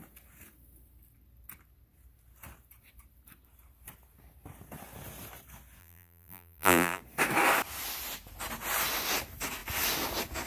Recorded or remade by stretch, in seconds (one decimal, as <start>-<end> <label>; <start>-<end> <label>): 0.0-5.8 recorded; 5.8-7.0 remade; 7.0-10.5 recorded